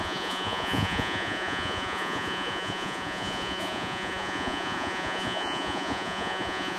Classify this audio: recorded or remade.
remade